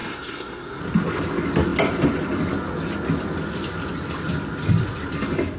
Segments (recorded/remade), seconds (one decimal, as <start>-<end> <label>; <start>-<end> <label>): 0.0-0.8 remade; 0.8-5.6 recorded